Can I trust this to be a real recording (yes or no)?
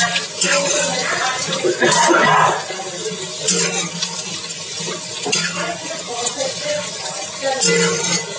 yes